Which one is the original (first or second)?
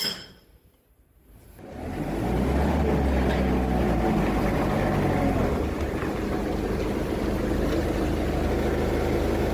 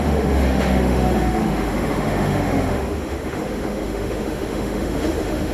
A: first